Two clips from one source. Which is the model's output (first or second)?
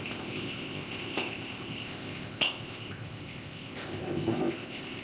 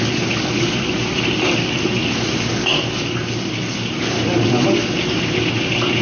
first